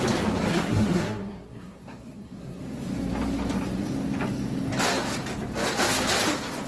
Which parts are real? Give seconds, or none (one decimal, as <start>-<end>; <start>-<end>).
0.0-0.5; 2.6-6.7